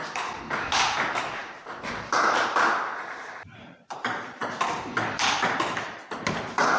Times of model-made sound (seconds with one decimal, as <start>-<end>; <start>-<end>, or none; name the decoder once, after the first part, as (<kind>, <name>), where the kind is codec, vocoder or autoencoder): 0.0-6.8 (vocoder, BigVGAN v2)